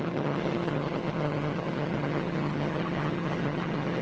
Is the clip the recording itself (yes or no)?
no